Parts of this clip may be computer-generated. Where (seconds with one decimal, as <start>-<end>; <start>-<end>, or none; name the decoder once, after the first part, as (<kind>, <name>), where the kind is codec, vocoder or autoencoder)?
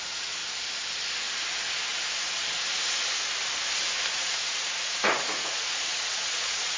0.0-0.4 (vocoder, Vocos); 4.1-6.8